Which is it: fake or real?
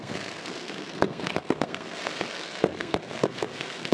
fake